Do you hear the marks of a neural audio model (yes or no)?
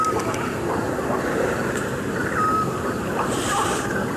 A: no